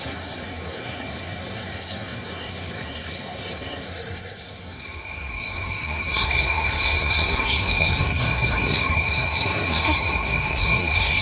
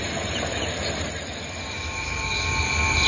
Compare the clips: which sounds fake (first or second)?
first